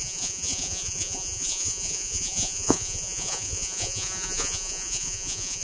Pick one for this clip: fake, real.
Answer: fake